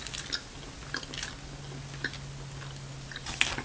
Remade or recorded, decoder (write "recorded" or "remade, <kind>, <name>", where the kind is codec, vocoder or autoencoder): recorded